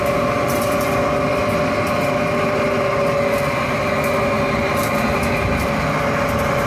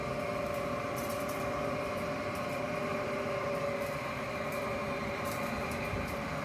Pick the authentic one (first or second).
first